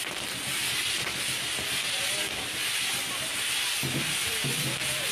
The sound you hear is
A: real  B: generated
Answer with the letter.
A